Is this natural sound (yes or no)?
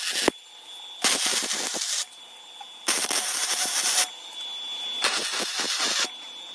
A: yes